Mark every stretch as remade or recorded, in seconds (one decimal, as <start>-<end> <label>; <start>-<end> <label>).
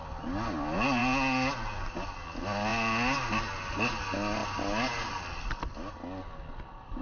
0.0-7.0 recorded